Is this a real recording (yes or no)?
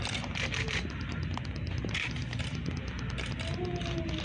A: yes